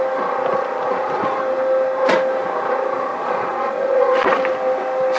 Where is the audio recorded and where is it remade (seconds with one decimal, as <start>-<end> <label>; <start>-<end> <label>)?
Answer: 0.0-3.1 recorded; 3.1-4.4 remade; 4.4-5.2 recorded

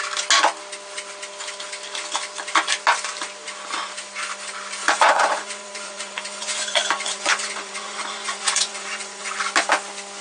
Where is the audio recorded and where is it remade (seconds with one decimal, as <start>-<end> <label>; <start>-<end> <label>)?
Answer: 0.0-4.8 recorded; 4.8-9.4 remade; 9.4-10.2 recorded

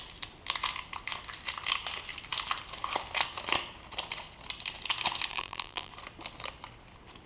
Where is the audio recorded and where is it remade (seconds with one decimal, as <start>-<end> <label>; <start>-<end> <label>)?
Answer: 0.0-5.3 recorded; 5.3-5.9 remade; 5.9-7.3 recorded

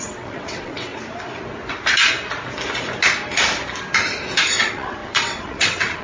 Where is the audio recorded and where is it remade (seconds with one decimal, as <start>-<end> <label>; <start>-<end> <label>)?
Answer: 0.0-0.9 remade; 0.9-4.5 recorded; 4.5-6.0 remade

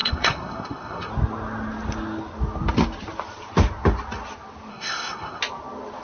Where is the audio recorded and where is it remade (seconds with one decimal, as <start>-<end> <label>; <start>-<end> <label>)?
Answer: 0.0-1.1 remade; 1.1-4.7 recorded; 4.7-5.4 remade; 5.4-6.0 recorded

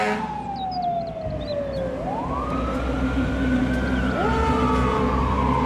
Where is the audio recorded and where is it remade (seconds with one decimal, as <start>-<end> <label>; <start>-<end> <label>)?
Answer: 0.0-5.7 recorded

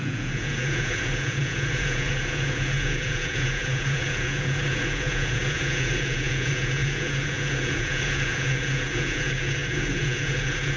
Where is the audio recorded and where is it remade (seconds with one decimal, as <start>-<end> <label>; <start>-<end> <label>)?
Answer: 0.0-10.8 remade